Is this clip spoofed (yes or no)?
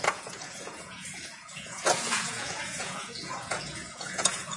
yes